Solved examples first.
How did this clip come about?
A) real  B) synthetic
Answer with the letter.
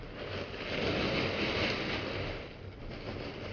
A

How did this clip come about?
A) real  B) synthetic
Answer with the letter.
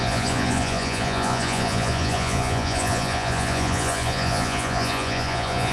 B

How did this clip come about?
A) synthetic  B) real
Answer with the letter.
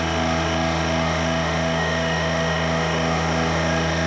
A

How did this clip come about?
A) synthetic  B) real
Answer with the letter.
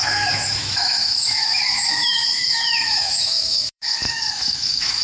A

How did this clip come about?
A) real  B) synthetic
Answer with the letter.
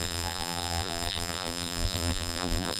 B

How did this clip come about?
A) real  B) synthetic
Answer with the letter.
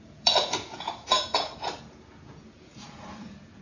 B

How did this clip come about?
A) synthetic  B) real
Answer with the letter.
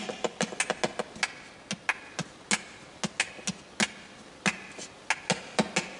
B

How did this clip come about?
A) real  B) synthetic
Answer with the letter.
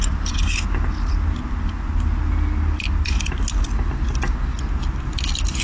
A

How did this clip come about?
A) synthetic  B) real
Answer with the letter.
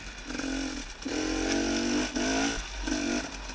B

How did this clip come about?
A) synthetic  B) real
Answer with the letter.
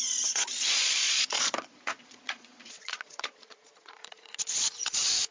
A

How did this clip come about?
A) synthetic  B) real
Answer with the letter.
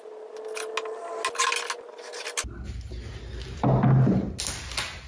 B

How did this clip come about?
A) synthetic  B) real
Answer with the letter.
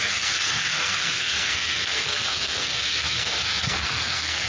A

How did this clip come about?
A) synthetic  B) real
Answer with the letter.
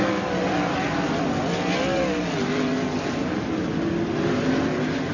B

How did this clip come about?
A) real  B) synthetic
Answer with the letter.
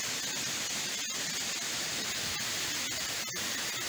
A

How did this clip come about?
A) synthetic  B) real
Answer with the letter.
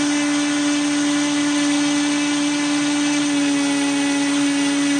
B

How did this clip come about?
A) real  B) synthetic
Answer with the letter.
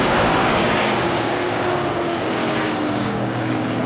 B